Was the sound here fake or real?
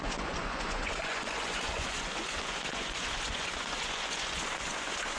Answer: fake